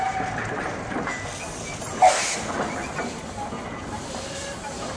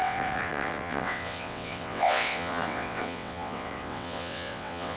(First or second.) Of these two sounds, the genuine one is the first